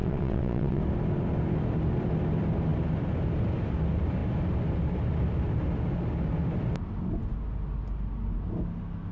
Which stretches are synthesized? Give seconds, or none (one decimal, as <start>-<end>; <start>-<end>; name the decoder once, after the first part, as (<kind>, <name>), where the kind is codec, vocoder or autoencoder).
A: 0.0-0.8 (vocoder, WaveNeXt)